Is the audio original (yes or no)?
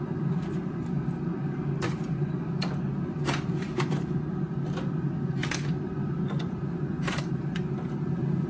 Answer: yes